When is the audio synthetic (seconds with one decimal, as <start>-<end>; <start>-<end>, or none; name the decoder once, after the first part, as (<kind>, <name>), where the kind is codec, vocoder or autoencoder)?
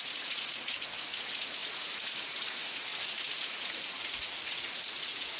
0.0-5.4 (vocoder, Vocos)